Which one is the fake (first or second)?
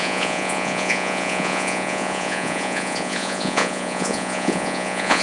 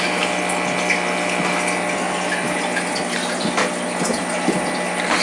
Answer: first